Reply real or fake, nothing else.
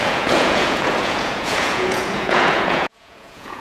fake